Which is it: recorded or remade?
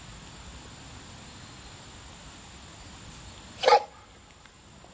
recorded